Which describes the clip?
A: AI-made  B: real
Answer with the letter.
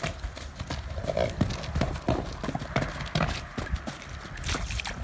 B